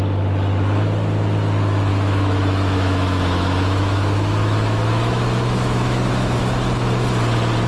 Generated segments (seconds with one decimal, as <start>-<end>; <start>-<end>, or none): 1.9-6.4